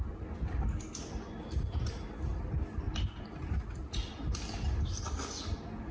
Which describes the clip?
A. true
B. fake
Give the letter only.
A